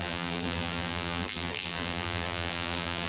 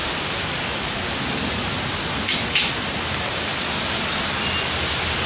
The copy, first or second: first